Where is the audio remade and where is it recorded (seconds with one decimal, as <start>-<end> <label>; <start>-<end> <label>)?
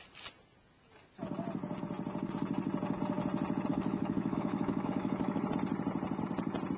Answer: 0.0-3.7 recorded; 3.7-5.4 remade; 5.4-6.8 recorded